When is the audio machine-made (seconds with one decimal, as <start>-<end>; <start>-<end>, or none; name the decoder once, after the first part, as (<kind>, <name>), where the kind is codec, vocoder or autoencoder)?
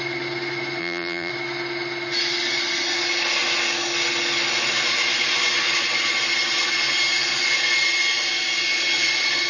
0.8-1.3 (vocoder, BigVGAN v2)